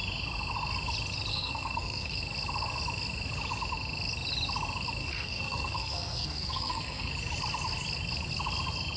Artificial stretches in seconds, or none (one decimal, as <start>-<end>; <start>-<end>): 1.3-2.2; 5.0-7.1